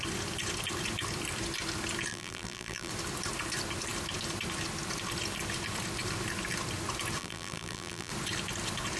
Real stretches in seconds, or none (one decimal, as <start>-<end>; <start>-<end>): 0.0-2.1; 2.9-7.2; 8.1-9.0